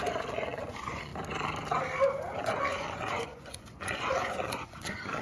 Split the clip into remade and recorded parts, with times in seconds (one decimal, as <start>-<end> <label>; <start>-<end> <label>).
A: 0.0-1.1 remade; 1.1-2.4 recorded; 2.4-5.2 remade